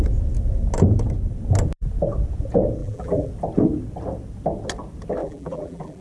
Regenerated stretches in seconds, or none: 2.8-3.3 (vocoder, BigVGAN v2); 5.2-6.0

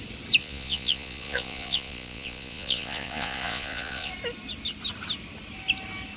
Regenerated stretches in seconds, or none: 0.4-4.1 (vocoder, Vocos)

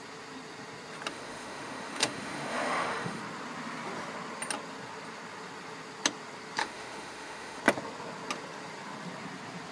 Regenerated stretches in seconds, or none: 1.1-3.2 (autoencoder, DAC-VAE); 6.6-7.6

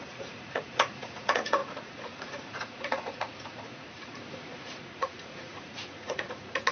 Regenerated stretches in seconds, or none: 0.0-6.7 (vocoder, Vocos)

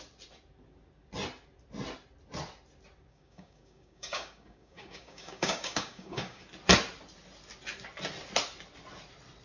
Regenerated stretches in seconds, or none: 3.1-6.4 (codec, DAC)

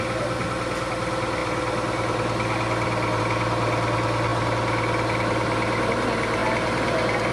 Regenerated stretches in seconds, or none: none

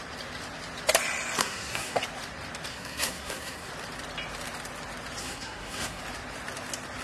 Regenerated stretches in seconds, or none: 1.4-2.0 (codec, SNAC); 2.7-3.7; 5.2-6.0

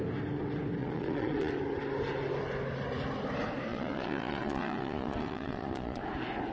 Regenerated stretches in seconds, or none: 0.8-1.5 (vocoder, Vocos); 3.7-6.0